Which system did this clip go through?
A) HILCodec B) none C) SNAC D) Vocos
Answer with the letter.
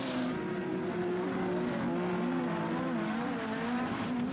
B